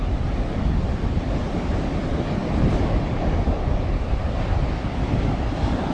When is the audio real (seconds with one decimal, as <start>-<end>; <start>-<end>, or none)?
0.0-5.9